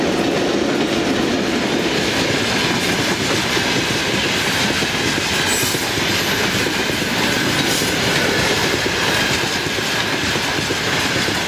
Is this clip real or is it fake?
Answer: real